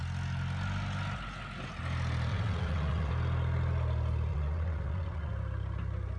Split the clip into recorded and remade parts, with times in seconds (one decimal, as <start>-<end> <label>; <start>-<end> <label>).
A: 0.0-2.3 recorded; 2.3-3.1 remade; 3.1-4.3 recorded; 4.3-5.3 remade; 5.3-6.2 recorded